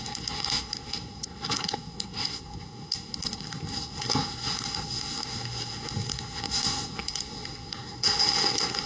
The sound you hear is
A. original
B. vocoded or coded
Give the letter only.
B